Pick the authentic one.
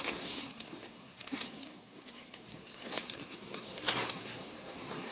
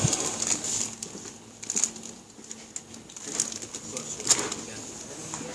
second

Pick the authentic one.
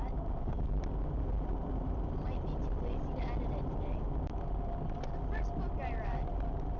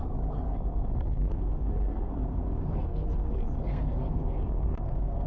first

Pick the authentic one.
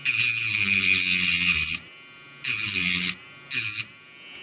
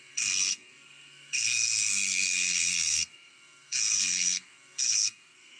first